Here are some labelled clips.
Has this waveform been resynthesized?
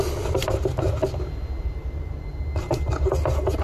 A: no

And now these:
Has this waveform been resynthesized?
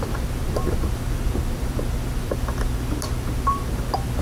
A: yes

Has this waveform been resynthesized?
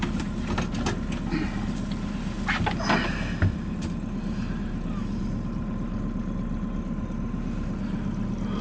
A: no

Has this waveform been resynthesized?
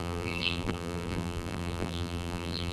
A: yes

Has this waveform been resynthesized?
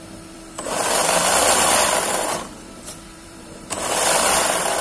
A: yes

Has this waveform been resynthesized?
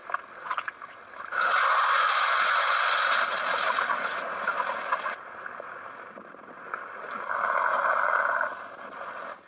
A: no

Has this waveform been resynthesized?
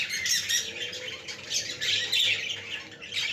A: no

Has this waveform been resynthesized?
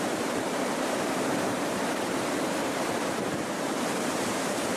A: yes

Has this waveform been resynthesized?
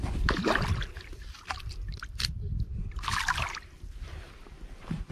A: yes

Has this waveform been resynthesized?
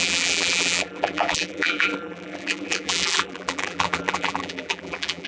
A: yes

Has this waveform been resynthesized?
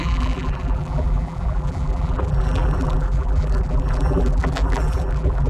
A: yes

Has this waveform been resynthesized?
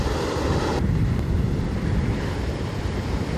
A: yes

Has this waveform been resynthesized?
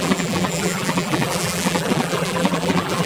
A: yes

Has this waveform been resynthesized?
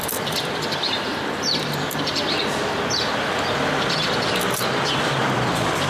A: yes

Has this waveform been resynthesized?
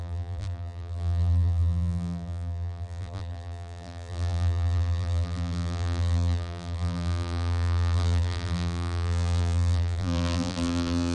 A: yes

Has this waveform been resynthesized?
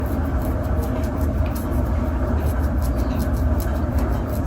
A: no